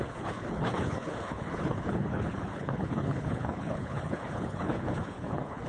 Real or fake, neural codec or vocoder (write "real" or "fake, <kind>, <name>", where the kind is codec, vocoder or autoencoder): fake, codec, HILCodec